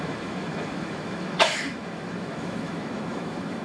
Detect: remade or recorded remade